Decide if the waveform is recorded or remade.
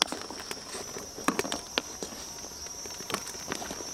recorded